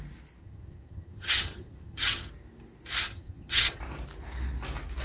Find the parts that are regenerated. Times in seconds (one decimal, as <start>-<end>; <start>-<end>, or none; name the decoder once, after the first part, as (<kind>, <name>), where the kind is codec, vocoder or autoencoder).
0.4-2.3 (vocoder, HiFi-GAN); 3.0-3.8